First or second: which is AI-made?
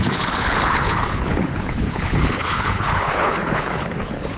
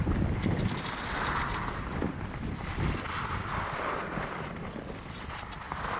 first